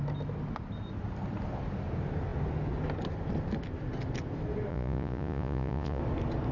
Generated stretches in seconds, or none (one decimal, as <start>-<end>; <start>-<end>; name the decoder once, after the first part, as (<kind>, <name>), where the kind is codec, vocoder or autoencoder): 4.7-6.0 (vocoder, Vocos)